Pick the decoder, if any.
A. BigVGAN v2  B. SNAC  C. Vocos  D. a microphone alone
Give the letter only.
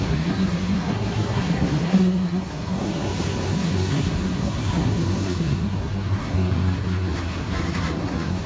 B